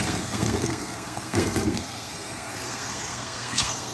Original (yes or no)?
no